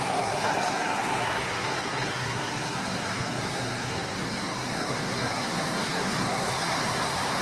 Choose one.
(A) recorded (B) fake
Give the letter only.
B